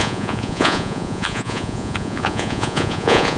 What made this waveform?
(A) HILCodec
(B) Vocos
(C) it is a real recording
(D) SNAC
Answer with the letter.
B